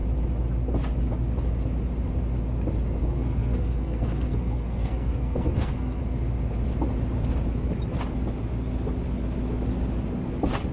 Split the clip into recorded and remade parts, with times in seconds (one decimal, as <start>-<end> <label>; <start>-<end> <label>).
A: 0.0-3.0 recorded; 3.0-6.0 remade; 6.0-10.7 recorded